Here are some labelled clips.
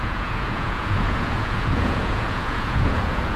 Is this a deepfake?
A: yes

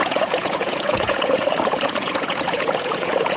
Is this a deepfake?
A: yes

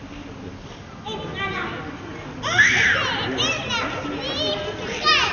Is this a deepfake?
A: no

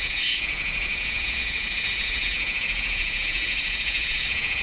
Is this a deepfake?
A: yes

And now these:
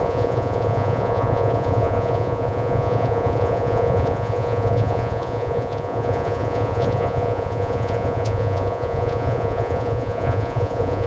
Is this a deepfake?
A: yes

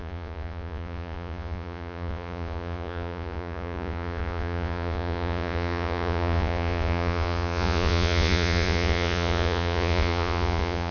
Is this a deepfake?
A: yes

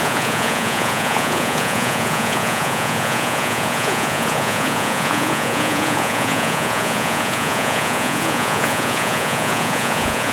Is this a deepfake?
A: yes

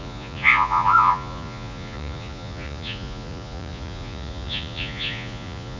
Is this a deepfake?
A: yes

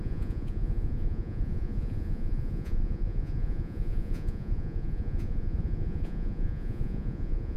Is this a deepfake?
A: yes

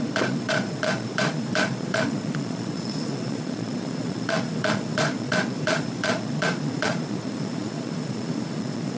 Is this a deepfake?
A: yes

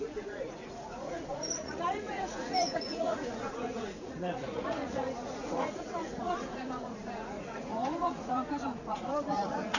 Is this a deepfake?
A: yes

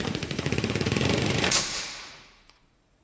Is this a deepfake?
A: yes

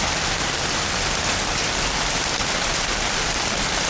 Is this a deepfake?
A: no